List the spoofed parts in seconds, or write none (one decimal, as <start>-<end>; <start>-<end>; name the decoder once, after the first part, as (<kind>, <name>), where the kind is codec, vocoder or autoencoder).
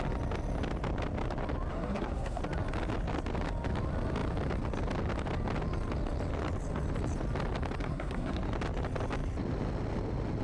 1.7-2.4 (codec, SNAC); 7.8-8.4